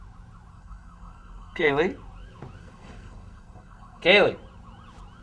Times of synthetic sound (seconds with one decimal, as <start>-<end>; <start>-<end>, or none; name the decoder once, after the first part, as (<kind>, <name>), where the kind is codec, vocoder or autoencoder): 0.5-1.7 (codec, SNAC); 2.6-4.0